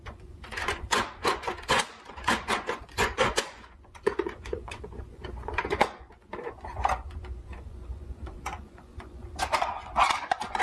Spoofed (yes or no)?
yes